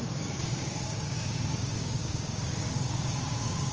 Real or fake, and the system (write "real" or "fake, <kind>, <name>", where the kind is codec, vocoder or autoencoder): fake, codec, DAC